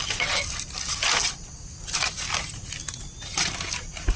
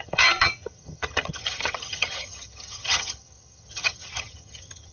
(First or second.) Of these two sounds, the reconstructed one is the second